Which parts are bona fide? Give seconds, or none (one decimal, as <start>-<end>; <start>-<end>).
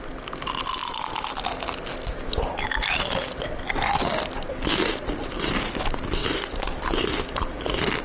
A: 0.0-8.0